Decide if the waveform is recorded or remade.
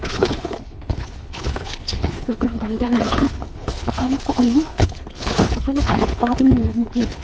remade